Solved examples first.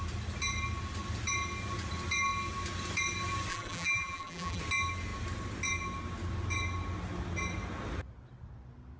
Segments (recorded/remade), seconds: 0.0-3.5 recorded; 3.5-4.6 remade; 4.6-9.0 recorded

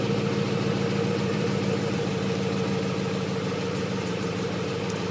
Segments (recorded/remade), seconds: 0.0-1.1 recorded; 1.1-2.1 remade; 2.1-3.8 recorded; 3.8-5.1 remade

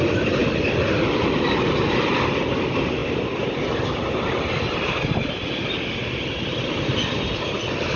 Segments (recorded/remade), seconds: 0.0-0.4 recorded; 0.4-1.4 remade; 1.4-8.0 recorded